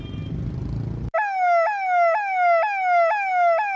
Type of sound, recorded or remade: recorded